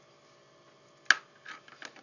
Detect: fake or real real